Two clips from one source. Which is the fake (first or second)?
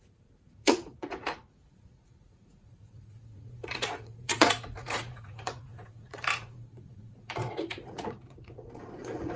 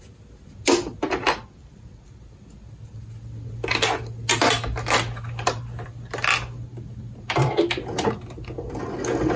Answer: first